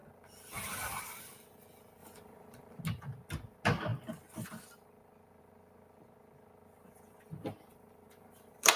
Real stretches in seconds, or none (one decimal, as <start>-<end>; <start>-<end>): 0.0-2.0; 2.8-7.7

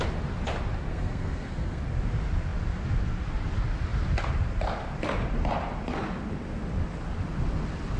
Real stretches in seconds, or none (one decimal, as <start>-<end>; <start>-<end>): 0.0-0.9; 1.8-8.0